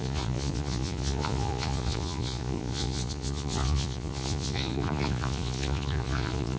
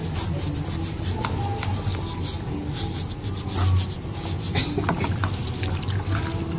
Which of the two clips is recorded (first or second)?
second